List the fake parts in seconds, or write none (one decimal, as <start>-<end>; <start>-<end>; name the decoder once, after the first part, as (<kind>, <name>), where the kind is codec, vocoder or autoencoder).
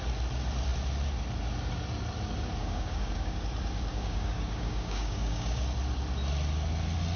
2.6-3.4 (codec, DAC); 3.9-5.6